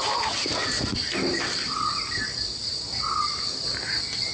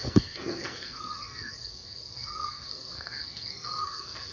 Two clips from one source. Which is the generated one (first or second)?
second